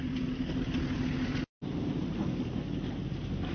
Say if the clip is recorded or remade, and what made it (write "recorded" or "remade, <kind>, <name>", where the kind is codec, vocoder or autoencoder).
recorded